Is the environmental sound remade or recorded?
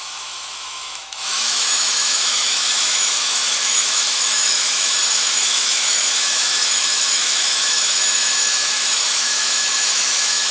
remade